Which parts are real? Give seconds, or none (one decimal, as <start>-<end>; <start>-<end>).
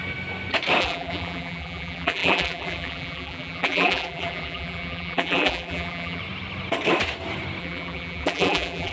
0.0-0.8; 6.2-7.6